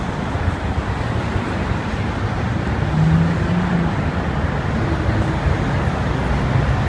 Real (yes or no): yes